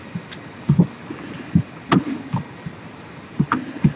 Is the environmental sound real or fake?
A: real